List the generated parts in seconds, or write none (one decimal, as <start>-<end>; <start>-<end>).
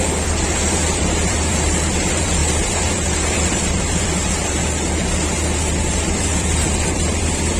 0.0-4.6; 5.9-7.6